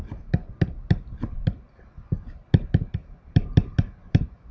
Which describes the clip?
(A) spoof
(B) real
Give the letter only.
B